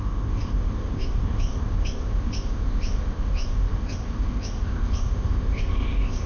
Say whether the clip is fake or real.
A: fake